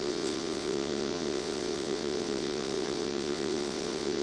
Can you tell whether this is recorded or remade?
remade